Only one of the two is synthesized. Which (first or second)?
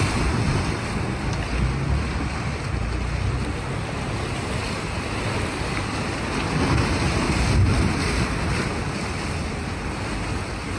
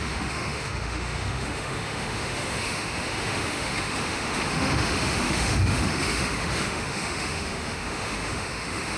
second